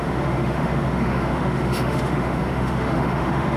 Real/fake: fake